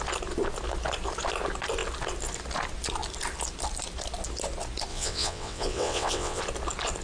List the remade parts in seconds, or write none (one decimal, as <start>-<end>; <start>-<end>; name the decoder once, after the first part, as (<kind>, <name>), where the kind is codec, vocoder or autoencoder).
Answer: 4.9-6.4 (vocoder, WaveNeXt)